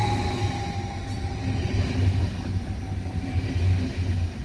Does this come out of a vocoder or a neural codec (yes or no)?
yes